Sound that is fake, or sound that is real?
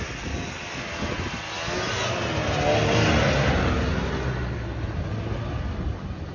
real